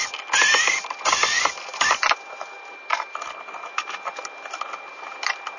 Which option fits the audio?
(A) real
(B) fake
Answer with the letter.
A